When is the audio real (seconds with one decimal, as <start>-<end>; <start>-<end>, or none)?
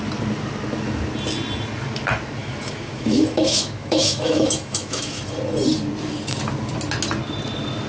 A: 0.0-2.4; 5.2-7.9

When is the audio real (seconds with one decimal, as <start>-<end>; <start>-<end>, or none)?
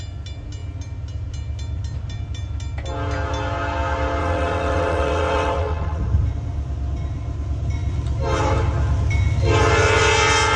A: 0.0-4.2; 6.0-10.6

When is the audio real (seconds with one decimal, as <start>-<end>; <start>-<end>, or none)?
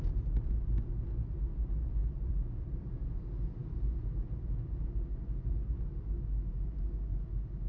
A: 0.0-2.0; 2.8-7.7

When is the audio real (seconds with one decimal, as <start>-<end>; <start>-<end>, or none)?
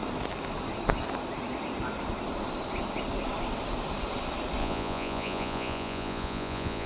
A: 0.0-4.6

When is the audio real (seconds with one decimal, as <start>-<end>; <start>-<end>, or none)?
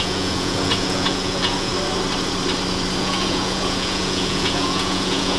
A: 1.7-3.0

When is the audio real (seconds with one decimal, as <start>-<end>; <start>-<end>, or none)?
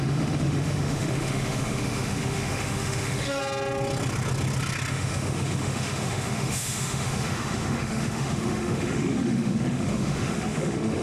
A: 3.4-4.9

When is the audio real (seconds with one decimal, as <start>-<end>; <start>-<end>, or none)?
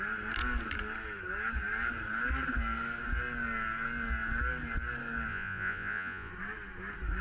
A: 0.0-5.3; 6.3-7.2